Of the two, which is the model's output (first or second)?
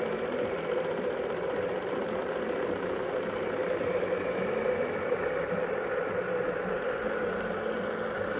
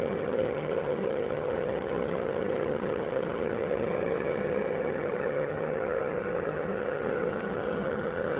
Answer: second